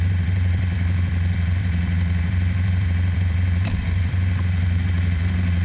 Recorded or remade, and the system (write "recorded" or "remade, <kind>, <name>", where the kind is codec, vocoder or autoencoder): remade, vocoder, BigVGAN v2